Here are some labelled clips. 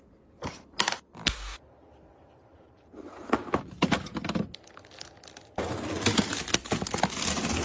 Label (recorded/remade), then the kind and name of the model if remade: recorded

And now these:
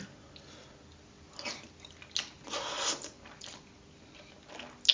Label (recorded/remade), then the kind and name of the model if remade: recorded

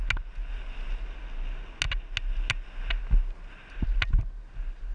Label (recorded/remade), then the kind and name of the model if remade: recorded